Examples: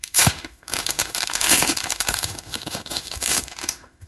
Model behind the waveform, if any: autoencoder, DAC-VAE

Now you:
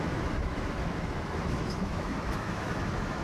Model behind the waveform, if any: autoencoder, DAC-VAE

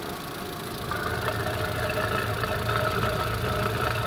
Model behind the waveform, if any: none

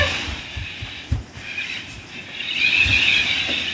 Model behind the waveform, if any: none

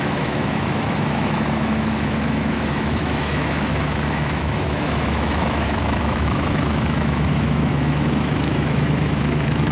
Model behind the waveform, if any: autoencoder, DAC-VAE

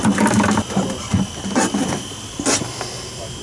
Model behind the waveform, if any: none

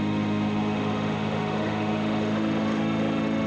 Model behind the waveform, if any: autoencoder, DAC-VAE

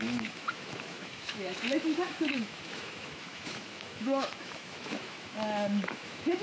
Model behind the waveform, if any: autoencoder, DAC-VAE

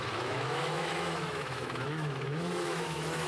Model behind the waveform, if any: autoencoder, DAC-VAE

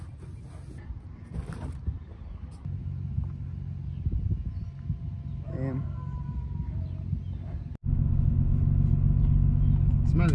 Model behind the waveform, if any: none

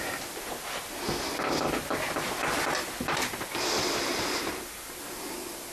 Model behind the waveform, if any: none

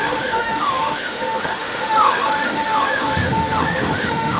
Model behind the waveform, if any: autoencoder, DAC-VAE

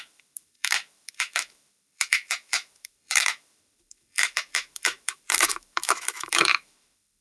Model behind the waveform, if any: autoencoder, DAC-VAE